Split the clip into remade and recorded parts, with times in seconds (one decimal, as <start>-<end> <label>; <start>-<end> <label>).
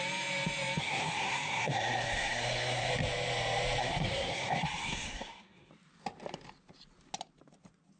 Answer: 0.0-0.8 recorded; 0.8-2.9 remade; 2.9-3.8 recorded; 3.8-5.7 remade; 5.7-8.0 recorded